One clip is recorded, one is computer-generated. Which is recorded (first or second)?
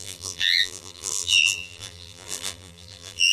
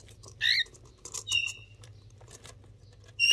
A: second